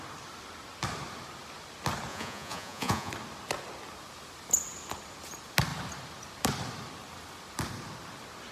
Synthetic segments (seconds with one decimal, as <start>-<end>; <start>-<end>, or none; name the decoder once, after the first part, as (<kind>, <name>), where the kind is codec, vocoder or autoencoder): 2.1-3.1 (vocoder, Vocos)